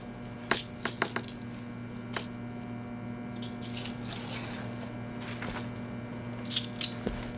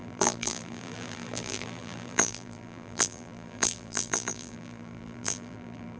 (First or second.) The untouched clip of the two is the first